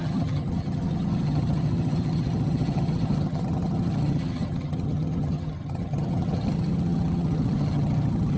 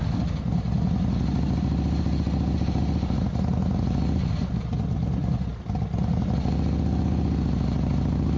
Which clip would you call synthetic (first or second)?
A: first